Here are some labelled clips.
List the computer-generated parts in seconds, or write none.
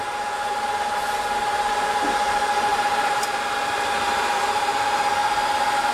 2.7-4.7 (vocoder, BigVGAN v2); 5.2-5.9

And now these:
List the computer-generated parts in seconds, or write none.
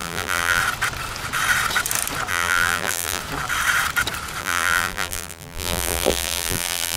0.0-0.6 (vocoder, BigVGAN v2); 2.3-3.2; 4.4-7.0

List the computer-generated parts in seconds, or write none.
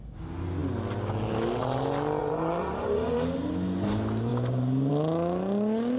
2.2-3.5 (vocoder, BigVGAN v2)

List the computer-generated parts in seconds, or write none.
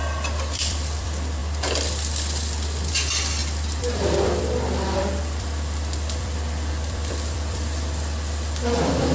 0.0-1.4 (vocoder, BigVGAN v2); 2.9-9.1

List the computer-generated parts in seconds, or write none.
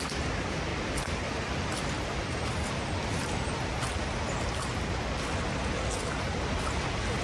none